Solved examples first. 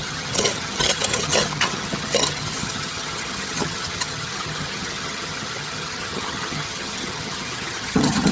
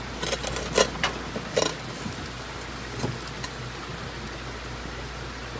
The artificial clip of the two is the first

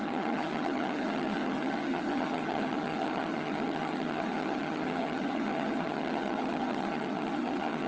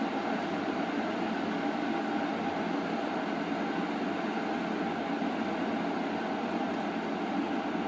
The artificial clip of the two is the first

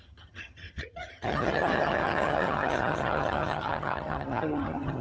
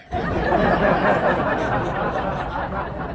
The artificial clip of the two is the first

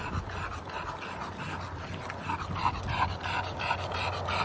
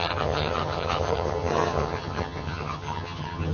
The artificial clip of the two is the second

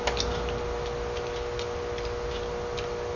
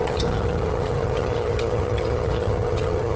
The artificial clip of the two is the second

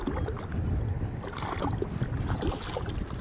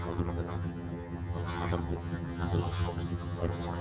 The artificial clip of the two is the second